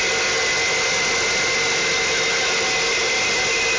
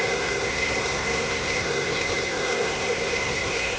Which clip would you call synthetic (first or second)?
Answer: second